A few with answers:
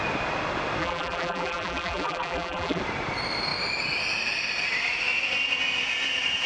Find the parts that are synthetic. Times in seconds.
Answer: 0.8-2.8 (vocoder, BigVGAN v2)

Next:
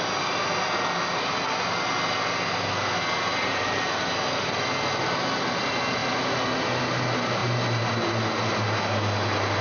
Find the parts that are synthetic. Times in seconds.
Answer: 3.4-4.0 (vocoder, BigVGAN v2); 7.4-8.0

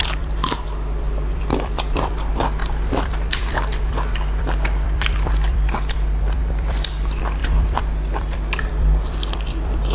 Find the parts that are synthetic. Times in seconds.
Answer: 0.0-9.9 (vocoder, BigVGAN v2)

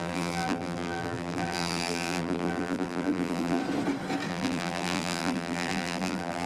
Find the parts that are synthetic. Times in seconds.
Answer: 0.0-3.6 (vocoder, BigVGAN v2); 4.3-6.5

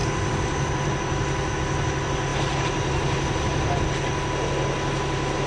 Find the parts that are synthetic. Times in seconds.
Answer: 0.0-1.5 (vocoder, BigVGAN v2)

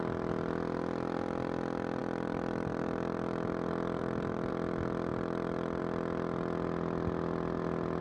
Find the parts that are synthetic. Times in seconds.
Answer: 2.0-4.5 (vocoder, BigVGAN v2); 5.1-5.8

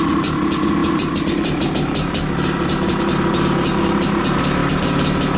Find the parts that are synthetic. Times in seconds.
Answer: 0.8-3.0 (vocoder, BigVGAN v2)